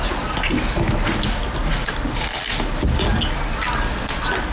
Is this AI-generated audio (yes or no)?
no